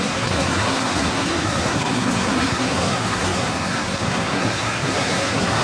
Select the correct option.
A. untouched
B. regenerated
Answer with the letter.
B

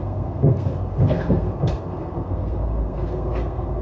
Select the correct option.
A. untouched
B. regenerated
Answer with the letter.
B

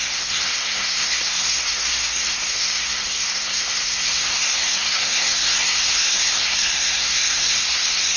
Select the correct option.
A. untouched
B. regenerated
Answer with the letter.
B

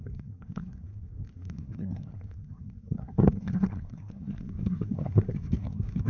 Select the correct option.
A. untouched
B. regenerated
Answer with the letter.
B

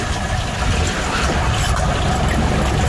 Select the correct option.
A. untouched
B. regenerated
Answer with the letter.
A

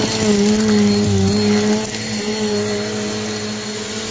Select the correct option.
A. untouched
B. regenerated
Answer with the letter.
A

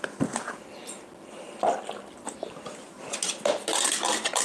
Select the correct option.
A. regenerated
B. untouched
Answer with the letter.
B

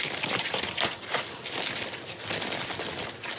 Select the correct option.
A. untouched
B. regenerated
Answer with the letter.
A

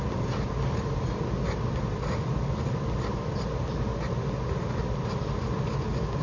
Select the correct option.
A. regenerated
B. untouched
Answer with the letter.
B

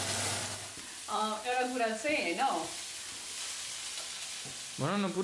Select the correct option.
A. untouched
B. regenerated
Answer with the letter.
A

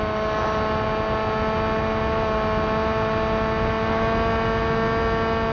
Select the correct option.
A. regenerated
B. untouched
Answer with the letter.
B